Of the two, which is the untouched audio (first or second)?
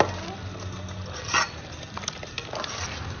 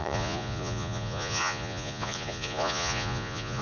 first